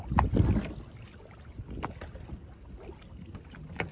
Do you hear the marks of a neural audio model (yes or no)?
no